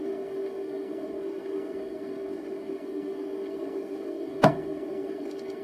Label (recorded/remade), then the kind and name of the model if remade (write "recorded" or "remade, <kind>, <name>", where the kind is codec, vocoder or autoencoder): remade, codec, SNAC